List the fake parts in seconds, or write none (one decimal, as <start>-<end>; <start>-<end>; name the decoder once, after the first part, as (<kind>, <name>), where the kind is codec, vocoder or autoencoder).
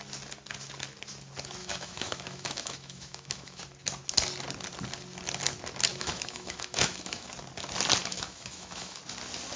1.6-3.6 (autoencoder, DAC-VAE); 5.9-7.3; 8.0-9.0